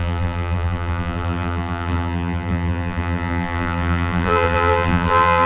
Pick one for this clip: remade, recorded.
remade